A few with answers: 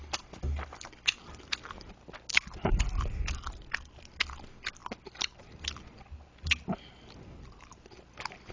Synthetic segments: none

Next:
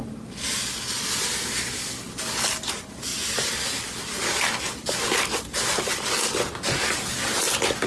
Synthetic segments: none

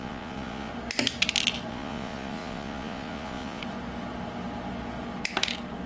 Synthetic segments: 0.0-0.7 (vocoder, Vocos); 1.7-3.6

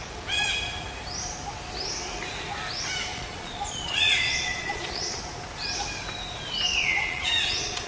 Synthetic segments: 3.1-5.2 (vocoder, Vocos); 6.7-7.9

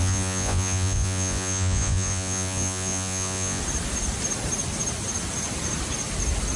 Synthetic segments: 0.0-3.6 (vocoder, Vocos)

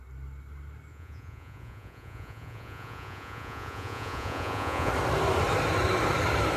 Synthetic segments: 0.9-4.9 (vocoder, Vocos)

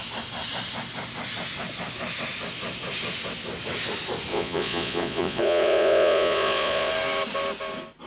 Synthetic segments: 4.3-6.9 (vocoder, Vocos)

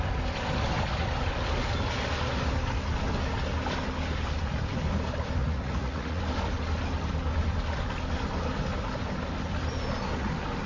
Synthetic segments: 5.4-6.2 (vocoder, Vocos)